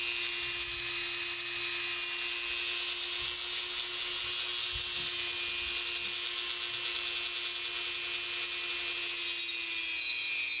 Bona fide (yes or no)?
yes